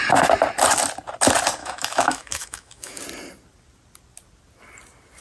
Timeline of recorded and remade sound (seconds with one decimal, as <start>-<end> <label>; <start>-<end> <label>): 0.0-1.6 recorded; 1.6-3.0 remade; 3.0-5.2 recorded